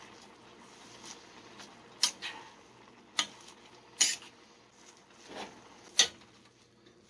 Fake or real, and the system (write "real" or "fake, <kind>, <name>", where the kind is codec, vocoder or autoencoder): real